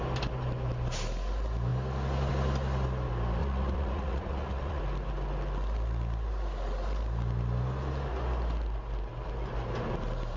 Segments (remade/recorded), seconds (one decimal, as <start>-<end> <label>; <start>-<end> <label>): 0.0-3.4 recorded; 3.4-4.8 remade; 4.8-10.4 recorded